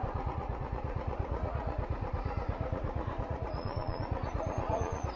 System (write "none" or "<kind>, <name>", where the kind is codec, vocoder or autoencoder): vocoder, Vocos